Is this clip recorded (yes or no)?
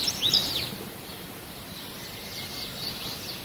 yes